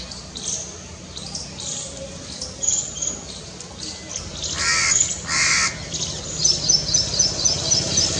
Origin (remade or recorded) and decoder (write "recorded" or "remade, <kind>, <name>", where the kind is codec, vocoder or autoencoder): recorded